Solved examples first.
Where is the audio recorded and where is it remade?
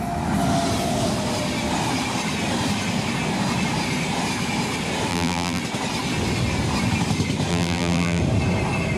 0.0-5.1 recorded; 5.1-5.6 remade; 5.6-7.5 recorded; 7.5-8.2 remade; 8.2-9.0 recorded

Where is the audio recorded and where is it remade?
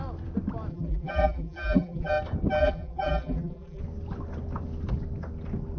0.0-0.7 recorded; 0.7-2.1 remade; 2.1-2.6 recorded; 2.6-3.8 remade; 3.8-5.8 recorded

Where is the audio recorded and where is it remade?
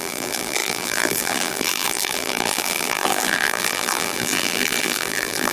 0.0-5.5 remade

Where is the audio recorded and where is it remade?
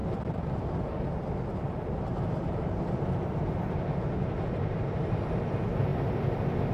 0.0-0.7 remade; 0.7-1.5 recorded; 1.5-5.5 remade; 5.5-6.7 recorded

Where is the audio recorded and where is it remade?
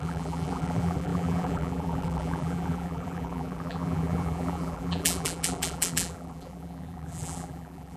0.0-8.0 remade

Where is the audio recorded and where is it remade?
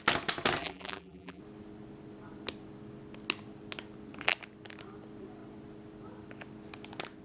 0.0-0.6 recorded; 0.6-1.4 remade; 1.4-7.2 recorded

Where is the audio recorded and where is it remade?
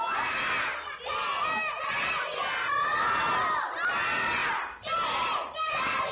0.0-6.1 recorded